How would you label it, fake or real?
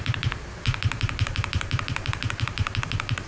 fake